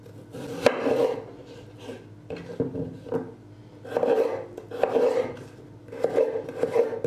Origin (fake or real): real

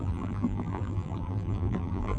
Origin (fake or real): fake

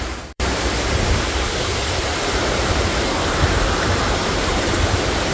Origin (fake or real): fake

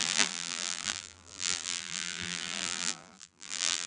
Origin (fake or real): fake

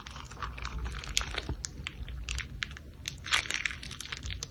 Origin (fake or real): real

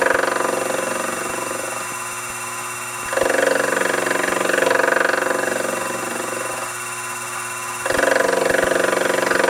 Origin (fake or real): real